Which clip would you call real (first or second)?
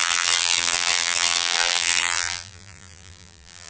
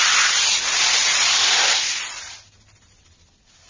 second